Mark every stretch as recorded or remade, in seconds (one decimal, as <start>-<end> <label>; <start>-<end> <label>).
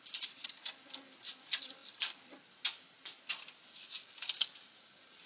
0.0-5.3 recorded